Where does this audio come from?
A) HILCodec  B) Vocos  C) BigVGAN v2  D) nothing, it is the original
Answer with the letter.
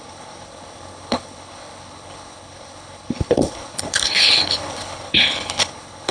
A